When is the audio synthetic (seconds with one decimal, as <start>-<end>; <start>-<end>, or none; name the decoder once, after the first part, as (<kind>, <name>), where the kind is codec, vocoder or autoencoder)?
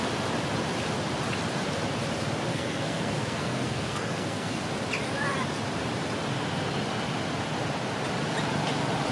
2.5-4.6 (codec, SNAC)